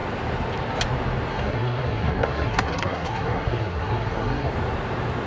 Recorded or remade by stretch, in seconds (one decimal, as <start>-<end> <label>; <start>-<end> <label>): 0.0-1.3 recorded; 1.3-4.5 remade; 4.5-5.3 recorded